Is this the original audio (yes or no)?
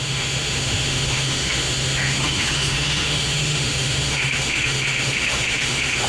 no